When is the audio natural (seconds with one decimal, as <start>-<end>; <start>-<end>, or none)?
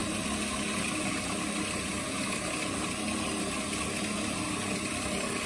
0.0-5.5